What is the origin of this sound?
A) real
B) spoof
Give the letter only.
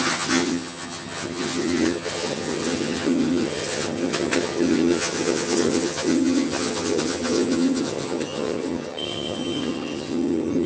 B